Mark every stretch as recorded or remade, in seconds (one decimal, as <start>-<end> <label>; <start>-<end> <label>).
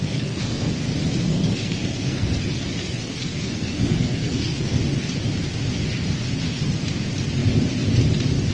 0.0-0.7 remade; 0.7-1.3 recorded; 1.3-4.8 remade; 4.8-8.5 recorded